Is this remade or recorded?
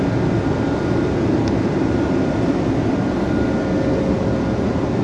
recorded